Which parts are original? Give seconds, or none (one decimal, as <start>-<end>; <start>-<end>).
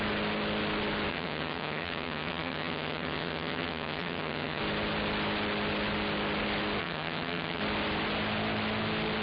0.0-1.1; 4.6-6.8; 7.6-9.2